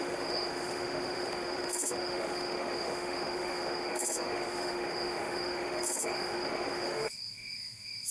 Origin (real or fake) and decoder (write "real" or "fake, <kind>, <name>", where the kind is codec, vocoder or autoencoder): fake, autoencoder, DAC-VAE